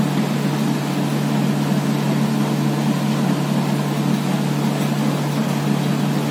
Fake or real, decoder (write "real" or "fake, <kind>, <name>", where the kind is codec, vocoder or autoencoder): real